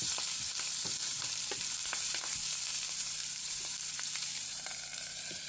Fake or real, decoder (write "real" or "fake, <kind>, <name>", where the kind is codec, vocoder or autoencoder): fake, vocoder, BigVGAN v2